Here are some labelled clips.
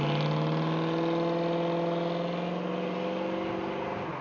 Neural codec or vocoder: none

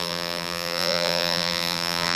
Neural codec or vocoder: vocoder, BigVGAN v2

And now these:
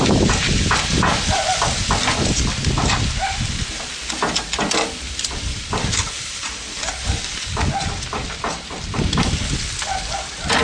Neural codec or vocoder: vocoder, BigVGAN v2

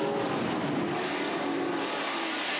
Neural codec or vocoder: none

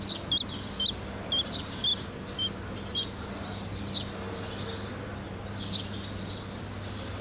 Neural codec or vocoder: none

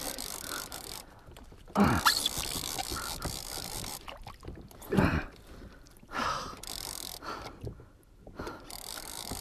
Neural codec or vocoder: vocoder, BigVGAN v2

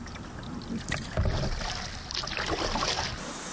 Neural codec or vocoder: none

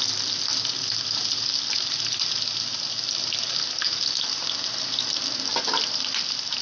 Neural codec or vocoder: none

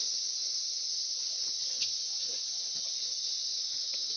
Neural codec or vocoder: none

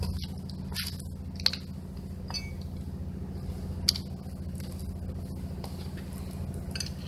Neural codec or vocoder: none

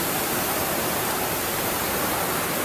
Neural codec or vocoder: vocoder, BigVGAN v2